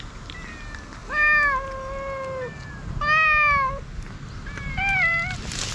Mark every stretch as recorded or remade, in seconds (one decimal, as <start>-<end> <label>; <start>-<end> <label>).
0.0-5.7 recorded